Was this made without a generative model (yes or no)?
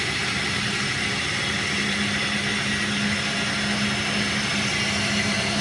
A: yes